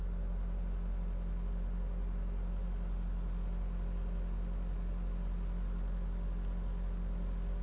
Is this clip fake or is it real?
real